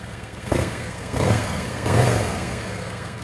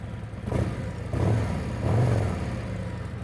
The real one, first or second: second